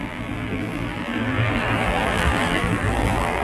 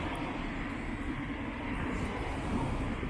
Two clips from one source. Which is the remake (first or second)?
first